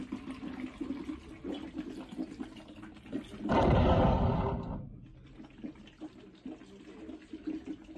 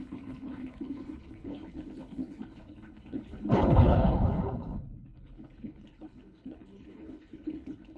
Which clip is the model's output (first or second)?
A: second